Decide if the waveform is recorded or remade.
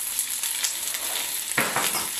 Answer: recorded